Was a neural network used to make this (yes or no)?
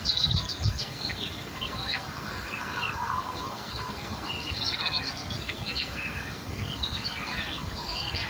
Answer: yes